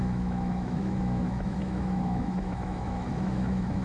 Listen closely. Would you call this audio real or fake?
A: fake